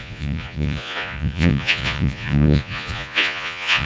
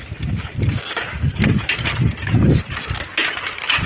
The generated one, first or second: first